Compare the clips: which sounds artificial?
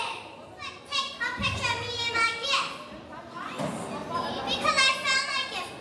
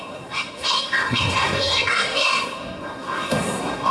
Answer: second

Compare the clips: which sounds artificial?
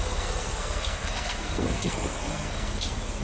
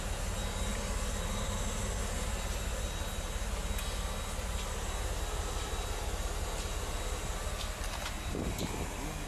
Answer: first